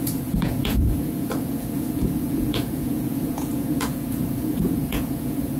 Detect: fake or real fake